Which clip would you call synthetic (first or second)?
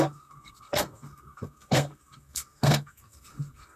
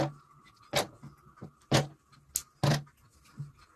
first